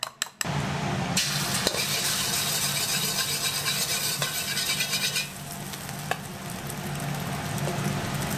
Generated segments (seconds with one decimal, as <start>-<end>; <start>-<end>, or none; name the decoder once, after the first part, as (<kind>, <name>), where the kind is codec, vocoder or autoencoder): none